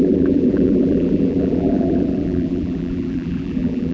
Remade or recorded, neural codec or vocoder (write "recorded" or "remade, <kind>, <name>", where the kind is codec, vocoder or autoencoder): remade, vocoder, BigVGAN v2